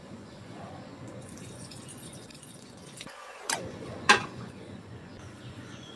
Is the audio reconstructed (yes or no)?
yes